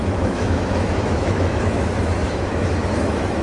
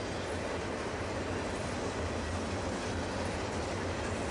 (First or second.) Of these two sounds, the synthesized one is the first